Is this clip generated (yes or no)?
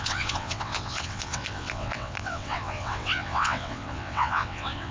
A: yes